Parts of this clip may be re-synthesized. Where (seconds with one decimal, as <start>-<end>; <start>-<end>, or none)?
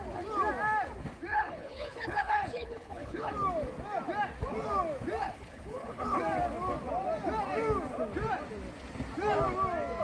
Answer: 1.3-3.3; 5.2-6.2